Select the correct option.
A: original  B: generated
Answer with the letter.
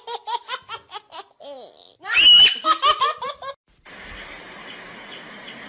A